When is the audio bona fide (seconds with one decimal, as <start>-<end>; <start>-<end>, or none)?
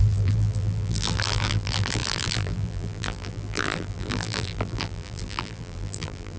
none